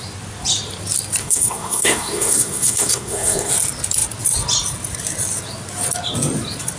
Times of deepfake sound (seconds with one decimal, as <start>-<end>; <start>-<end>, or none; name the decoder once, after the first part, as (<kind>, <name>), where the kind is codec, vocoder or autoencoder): 1.2-3.5 (codec, SNAC)